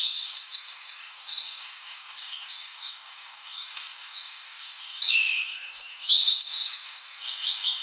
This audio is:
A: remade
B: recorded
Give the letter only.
A